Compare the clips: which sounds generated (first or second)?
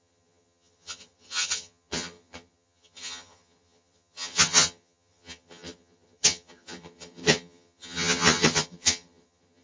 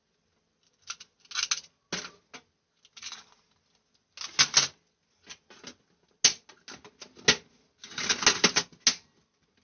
first